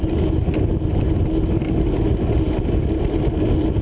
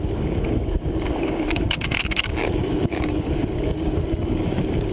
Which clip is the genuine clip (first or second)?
first